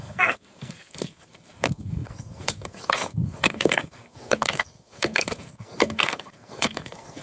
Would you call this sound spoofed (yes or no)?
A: yes